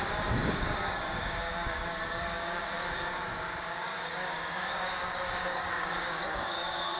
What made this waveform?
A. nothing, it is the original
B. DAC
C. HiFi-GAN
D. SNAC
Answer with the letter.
B